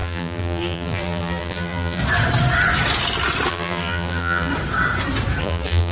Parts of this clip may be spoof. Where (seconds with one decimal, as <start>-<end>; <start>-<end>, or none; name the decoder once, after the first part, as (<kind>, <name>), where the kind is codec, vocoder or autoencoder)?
0.0-2.0 (vocoder, BigVGAN v2); 3.5-4.5; 5.4-5.9